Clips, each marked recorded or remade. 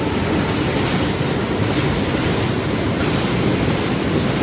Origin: recorded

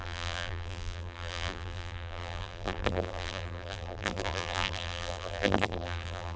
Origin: remade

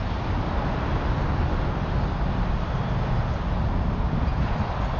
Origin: recorded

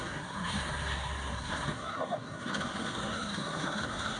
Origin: remade